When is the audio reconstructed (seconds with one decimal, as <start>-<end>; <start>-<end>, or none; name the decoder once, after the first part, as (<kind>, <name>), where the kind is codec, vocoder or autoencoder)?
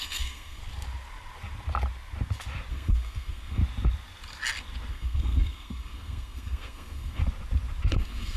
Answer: 0.0-0.6 (codec, SNAC); 2.7-3.6; 4.9-7.2; 7.9-8.4